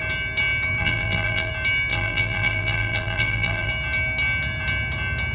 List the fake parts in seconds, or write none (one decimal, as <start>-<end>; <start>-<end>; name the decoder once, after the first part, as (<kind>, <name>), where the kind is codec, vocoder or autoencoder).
0.8-1.5 (vocoder, BigVGAN v2); 1.9-3.7